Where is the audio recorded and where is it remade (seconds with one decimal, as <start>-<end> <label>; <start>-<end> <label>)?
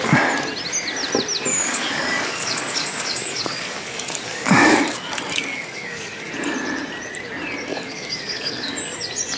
0.0-1.5 recorded; 1.5-6.3 remade; 6.3-7.7 recorded; 7.7-8.7 remade; 8.7-9.4 recorded